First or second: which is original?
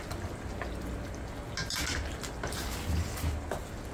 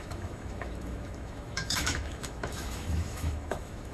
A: first